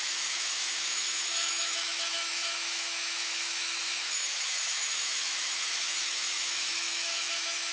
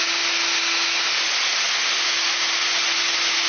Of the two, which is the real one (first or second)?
second